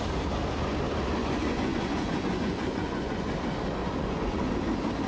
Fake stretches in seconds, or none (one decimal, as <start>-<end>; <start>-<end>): 1.2-3.3; 3.8-4.5

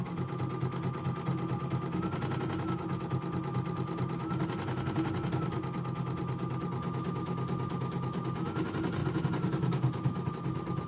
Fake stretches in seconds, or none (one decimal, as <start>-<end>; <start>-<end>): none

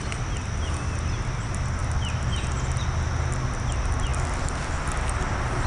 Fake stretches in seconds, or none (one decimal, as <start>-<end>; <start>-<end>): none

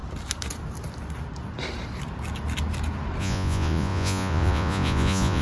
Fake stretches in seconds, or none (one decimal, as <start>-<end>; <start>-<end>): 3.2-5.4

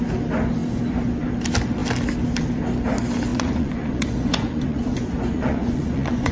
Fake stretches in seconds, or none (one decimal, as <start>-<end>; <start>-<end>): 3.3-6.3